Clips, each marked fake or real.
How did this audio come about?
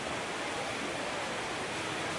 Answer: real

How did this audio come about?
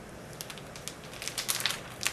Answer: real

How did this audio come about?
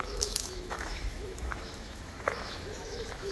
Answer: fake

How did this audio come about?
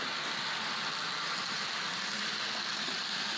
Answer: real